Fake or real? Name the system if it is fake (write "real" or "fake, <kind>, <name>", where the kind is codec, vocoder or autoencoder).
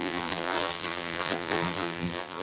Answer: fake, vocoder, BigVGAN v2